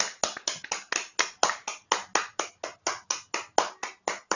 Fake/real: real